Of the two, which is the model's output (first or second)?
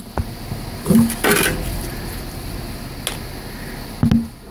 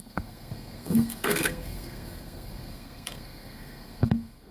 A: second